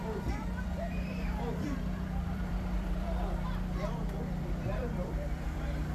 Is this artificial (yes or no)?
yes